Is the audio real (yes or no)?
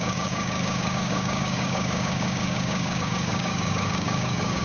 no